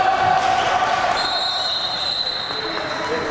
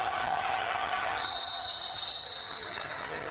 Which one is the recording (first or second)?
first